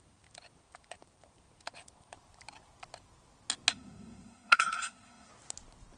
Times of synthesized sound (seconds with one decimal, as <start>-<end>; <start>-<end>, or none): 3.7-5.3